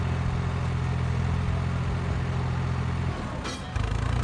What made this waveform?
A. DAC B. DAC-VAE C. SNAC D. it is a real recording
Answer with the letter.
D